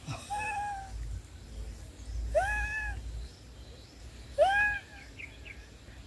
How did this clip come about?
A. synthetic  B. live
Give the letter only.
B